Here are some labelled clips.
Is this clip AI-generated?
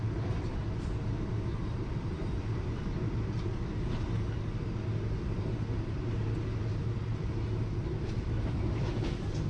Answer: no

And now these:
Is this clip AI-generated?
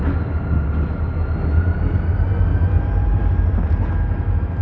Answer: no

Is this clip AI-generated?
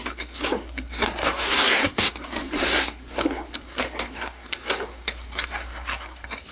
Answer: yes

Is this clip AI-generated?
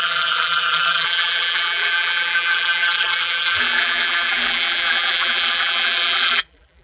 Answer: yes